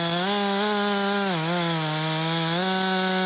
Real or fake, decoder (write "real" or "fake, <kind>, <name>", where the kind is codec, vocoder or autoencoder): real